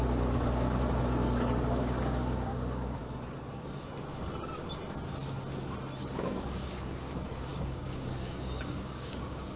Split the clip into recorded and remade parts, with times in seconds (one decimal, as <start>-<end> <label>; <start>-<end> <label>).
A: 0.0-3.0 remade; 3.0-6.0 recorded; 6.0-9.6 remade